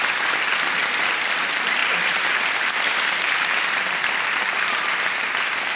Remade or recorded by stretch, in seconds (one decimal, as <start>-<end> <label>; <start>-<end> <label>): 0.0-1.8 recorded; 1.8-5.2 remade; 5.2-5.7 recorded